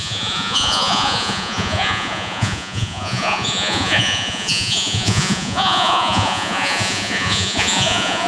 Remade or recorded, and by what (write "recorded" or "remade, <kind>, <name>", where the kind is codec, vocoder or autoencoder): remade, vocoder, Vocos